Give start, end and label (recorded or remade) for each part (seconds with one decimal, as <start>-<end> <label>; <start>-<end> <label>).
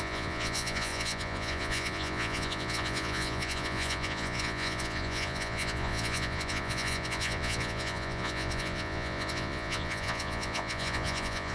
0.0-11.5 remade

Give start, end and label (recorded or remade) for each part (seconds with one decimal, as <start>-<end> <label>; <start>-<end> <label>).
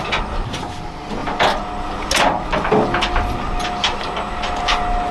0.0-5.1 recorded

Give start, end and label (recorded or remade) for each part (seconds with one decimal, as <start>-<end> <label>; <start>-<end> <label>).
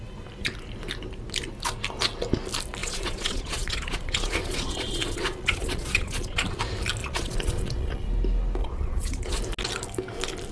0.0-2.8 recorded; 2.8-6.6 remade; 6.6-7.0 recorded; 7.0-8.1 remade; 8.1-8.6 recorded; 8.6-9.4 remade; 9.4-10.5 recorded